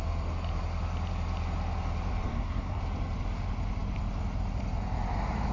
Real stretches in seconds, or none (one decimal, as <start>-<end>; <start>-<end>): 0.0-2.3; 2.8-5.5